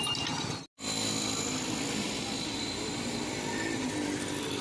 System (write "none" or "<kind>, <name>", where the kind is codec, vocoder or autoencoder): none